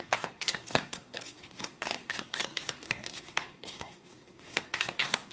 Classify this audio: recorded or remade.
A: remade